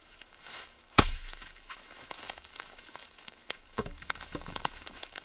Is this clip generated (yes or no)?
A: yes